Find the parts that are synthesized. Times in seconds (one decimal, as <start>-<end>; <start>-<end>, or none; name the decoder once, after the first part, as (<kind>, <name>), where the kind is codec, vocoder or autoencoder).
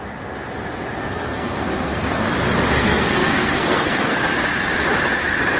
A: 1.0-2.2 (codec, SNAC); 2.8-4.3